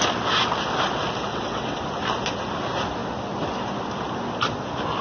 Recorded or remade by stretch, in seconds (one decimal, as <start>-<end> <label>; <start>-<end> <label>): 0.0-1.3 recorded; 1.3-1.8 remade; 1.8-5.0 recorded